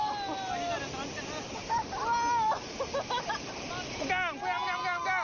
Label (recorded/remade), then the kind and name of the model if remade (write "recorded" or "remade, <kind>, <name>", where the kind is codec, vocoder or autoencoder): recorded